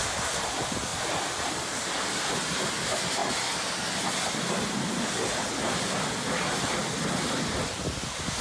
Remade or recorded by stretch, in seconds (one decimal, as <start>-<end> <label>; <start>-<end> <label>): 0.0-8.4 recorded